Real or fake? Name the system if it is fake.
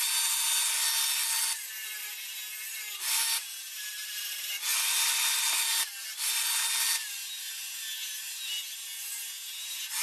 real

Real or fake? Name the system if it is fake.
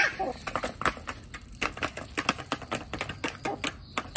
real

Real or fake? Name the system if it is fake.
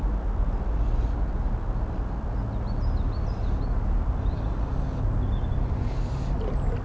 real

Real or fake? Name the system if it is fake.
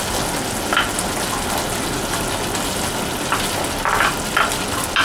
real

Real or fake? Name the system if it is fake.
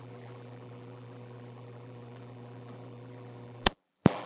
fake, vocoder, BigVGAN v2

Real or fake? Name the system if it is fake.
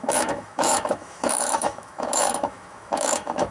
fake, autoencoder, DAC-VAE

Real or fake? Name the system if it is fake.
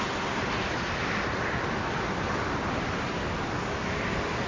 real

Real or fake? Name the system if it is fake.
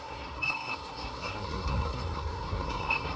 fake, codec, SNAC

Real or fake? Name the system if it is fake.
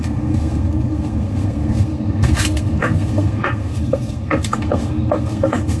fake, codec, SNAC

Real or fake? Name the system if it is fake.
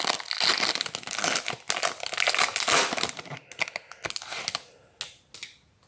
real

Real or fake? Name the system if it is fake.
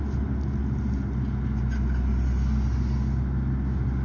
real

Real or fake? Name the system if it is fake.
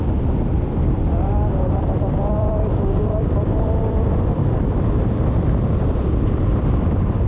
fake, vocoder, BigVGAN v2